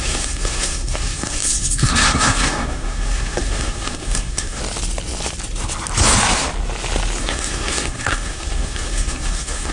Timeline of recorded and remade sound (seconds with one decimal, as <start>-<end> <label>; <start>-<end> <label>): 0.0-4.6 remade; 4.6-7.2 recorded; 7.2-9.7 remade